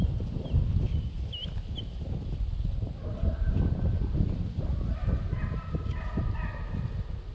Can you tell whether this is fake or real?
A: real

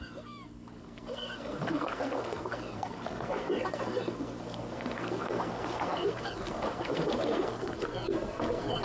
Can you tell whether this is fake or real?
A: fake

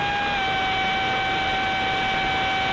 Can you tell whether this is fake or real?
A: real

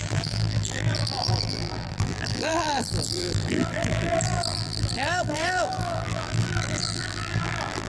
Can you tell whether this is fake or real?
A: fake